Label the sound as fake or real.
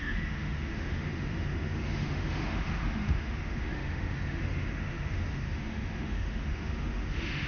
fake